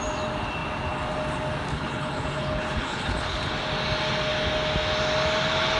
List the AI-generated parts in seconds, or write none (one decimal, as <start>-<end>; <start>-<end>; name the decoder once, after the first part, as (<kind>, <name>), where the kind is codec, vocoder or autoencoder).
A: 1.7-3.5 (codec, HILCodec)

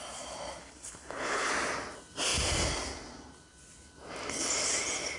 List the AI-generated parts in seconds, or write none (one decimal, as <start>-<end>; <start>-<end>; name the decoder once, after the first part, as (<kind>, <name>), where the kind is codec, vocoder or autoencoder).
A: 0.6-1.5 (codec, HILCodec)

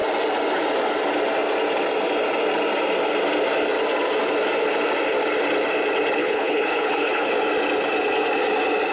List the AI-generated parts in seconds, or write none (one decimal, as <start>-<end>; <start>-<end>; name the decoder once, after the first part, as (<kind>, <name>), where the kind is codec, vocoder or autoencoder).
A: 6.2-7.3 (codec, HILCodec)

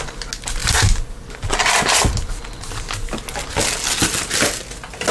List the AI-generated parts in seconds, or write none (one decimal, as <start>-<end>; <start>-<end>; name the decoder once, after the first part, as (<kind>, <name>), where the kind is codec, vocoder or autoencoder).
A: none

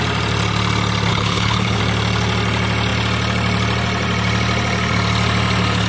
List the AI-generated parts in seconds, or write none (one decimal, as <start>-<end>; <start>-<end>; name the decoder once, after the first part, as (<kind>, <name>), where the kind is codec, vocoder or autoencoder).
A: 1.1-1.8 (codec, HILCodec)

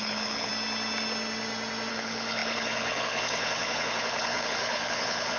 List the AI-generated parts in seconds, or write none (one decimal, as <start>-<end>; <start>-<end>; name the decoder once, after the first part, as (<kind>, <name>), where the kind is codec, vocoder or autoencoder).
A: 0.0-0.5 (codec, HILCodec); 1.9-5.4

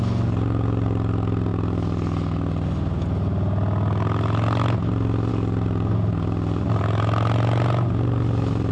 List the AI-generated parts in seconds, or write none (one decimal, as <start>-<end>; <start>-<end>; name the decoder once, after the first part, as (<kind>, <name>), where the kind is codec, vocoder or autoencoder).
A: none

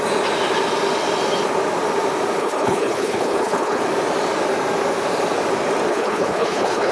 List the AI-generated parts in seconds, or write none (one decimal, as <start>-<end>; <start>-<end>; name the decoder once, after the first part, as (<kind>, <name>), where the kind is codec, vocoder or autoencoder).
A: 2.4-3.8 (codec, HILCodec); 5.9-6.9